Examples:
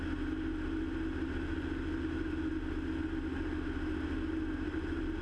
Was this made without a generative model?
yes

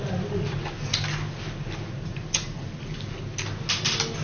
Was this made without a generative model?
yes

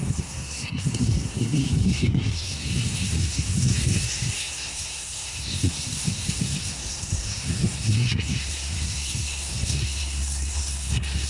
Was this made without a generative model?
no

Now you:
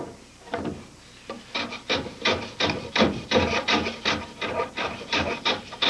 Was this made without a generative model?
yes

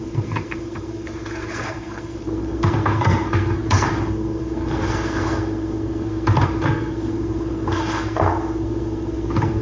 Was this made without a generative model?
no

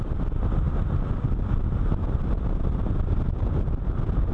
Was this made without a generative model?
yes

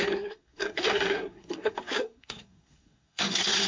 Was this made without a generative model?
no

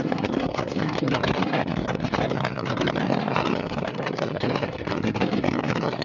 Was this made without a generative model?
no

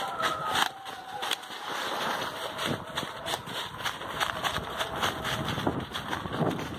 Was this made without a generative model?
yes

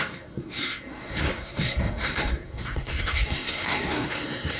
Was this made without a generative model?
no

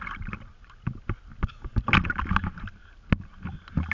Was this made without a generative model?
yes